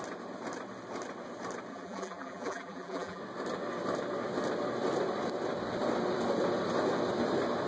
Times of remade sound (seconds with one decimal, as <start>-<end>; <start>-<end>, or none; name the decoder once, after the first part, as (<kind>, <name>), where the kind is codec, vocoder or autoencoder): 1.7-3.2 (vocoder, BigVGAN v2)